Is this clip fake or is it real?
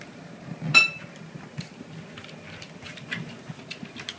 real